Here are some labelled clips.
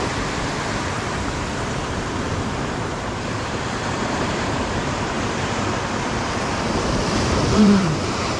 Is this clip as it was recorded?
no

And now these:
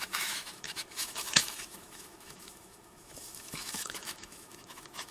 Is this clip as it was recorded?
no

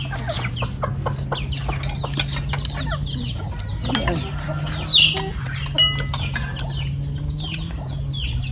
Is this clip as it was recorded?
yes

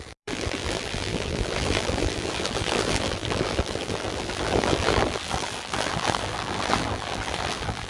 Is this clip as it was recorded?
no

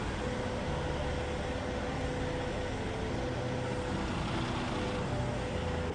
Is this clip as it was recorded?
yes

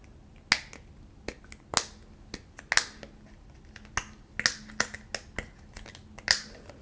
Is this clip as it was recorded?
yes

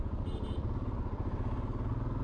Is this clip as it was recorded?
yes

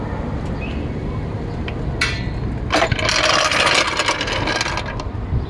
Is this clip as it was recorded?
yes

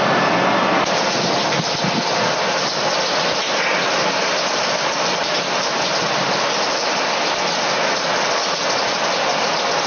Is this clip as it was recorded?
yes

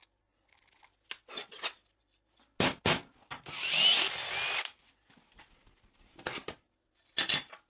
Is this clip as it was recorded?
yes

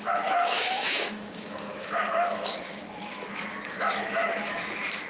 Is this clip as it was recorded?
no